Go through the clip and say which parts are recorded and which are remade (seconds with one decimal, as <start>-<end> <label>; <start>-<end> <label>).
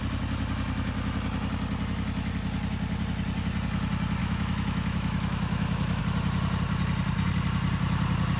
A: 0.0-4.2 recorded; 4.2-6.0 remade; 6.0-8.4 recorded